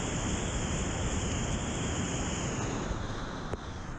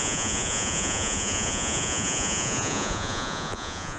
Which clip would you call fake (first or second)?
second